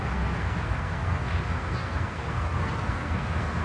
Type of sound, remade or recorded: remade